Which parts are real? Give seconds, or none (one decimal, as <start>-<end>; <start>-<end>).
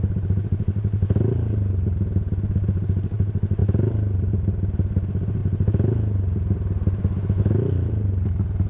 0.0-8.7